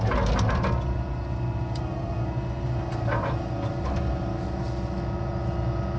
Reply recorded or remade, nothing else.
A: recorded